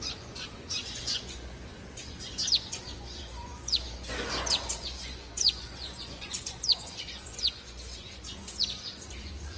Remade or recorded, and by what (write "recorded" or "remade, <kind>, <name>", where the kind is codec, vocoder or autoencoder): remade, vocoder, Vocos